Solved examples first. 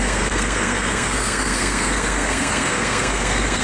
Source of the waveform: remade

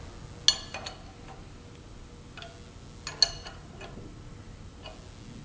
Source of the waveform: recorded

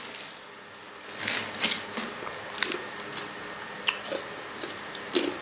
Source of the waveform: recorded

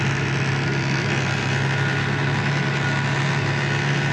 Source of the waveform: recorded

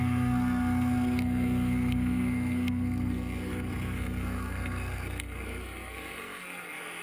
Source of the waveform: remade